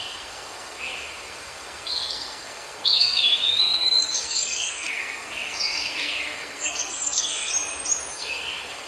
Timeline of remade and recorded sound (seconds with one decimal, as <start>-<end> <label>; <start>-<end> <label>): 0.0-7.5 remade; 7.5-8.1 recorded; 8.1-8.9 remade